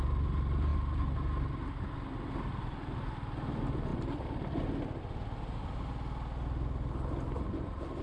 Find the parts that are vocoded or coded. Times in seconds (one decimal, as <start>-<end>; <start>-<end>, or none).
none